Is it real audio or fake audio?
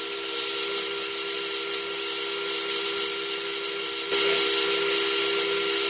real